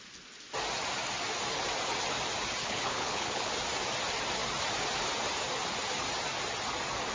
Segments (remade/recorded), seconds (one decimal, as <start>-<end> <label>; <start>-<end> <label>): 0.0-2.6 recorded; 2.6-3.5 remade; 3.5-7.1 recorded